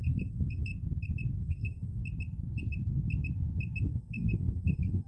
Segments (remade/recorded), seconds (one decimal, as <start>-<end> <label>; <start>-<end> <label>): 0.0-0.7 remade; 0.7-1.4 recorded; 1.4-2.0 remade; 2.0-3.8 recorded; 3.8-5.1 remade